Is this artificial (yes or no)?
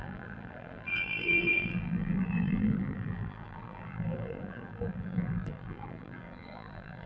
yes